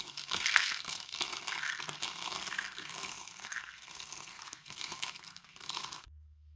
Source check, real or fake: fake